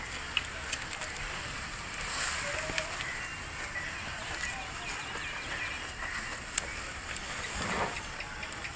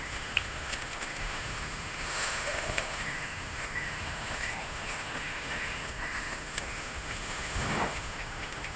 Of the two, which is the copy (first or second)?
second